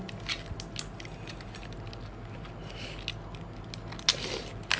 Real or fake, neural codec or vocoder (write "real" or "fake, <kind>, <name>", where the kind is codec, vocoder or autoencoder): real